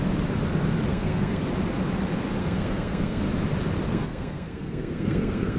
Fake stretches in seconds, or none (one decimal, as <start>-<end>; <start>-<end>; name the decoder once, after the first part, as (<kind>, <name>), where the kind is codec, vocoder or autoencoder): 0.9-1.4 (codec, SNAC); 2.4-3.2; 3.9-5.6